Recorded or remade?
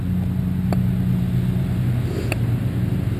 recorded